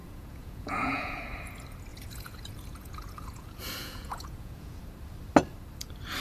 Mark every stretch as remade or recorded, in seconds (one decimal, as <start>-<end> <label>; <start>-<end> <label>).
0.0-1.2 remade; 1.2-1.9 recorded; 1.9-4.8 remade; 4.8-6.2 recorded